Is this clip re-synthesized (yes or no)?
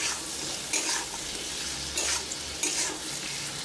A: no